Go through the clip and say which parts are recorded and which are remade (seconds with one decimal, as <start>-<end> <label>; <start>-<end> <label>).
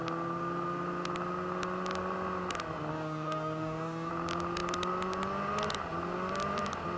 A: 0.0-2.9 recorded; 2.9-4.1 remade; 4.1-7.0 recorded